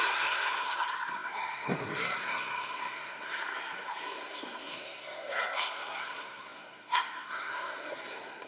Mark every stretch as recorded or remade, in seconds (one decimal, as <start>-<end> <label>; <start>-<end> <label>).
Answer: 0.0-8.5 remade